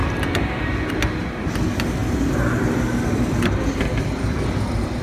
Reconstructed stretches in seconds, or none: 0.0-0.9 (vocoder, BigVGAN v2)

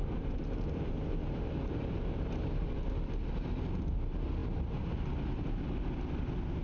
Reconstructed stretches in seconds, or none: 0.0-2.9 (vocoder, BigVGAN v2)

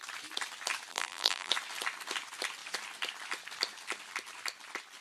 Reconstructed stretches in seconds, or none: 0.9-1.5 (vocoder, BigVGAN v2)

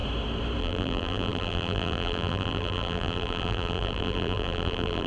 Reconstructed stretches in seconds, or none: 0.6-5.1 (vocoder, BigVGAN v2)

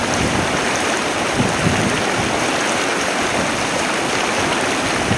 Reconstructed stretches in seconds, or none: 0.0-2.0 (vocoder, BigVGAN v2)

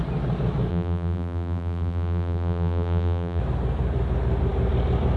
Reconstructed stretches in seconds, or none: 0.7-3.4 (vocoder, BigVGAN v2)